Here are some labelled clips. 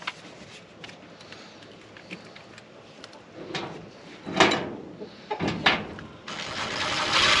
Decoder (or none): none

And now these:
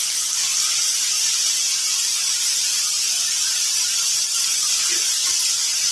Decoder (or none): none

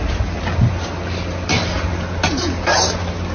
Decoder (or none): none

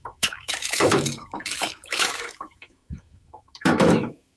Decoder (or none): autoencoder, DAC-VAE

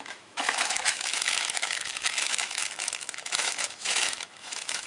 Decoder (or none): autoencoder, DAC-VAE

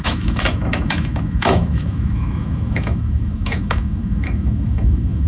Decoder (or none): autoencoder, DAC-VAE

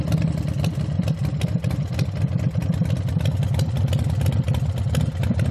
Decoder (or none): none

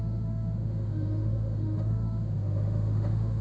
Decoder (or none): autoencoder, DAC-VAE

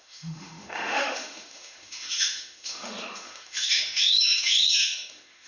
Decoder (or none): autoencoder, DAC-VAE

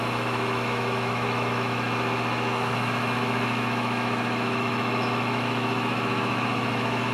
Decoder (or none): autoencoder, DAC-VAE